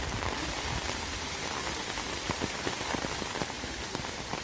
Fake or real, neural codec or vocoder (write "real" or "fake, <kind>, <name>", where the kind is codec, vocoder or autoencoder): real